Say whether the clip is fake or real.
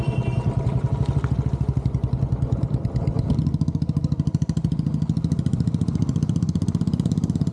real